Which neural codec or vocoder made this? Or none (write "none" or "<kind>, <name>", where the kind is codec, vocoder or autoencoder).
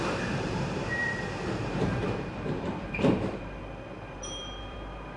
vocoder, BigVGAN v2